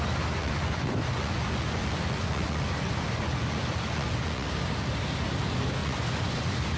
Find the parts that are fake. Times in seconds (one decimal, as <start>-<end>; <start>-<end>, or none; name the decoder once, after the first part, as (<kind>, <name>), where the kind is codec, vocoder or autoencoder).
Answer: 0.4-4.5 (vocoder, Vocos); 5.8-6.8